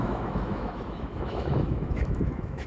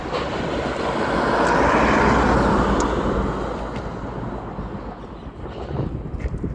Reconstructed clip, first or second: first